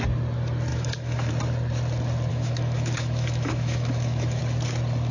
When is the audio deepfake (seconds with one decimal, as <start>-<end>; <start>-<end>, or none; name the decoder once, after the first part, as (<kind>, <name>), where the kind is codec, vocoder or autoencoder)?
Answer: 0.7-1.3 (autoencoder, DAC-VAE); 2.3-4.4